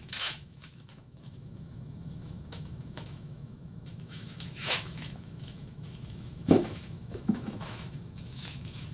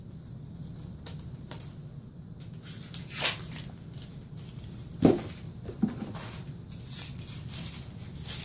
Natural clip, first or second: second